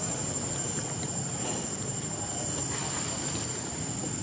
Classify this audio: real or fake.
real